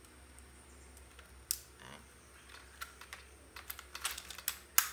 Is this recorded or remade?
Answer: recorded